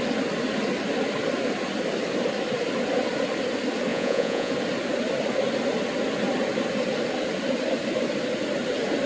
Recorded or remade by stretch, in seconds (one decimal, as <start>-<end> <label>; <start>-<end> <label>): 0.0-3.9 recorded; 3.9-4.5 remade; 4.5-9.1 recorded